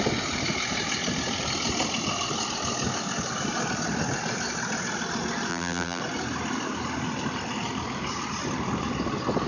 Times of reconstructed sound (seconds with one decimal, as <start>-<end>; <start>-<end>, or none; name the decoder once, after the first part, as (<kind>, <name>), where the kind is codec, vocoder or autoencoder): 5.5-6.0 (vocoder, BigVGAN v2)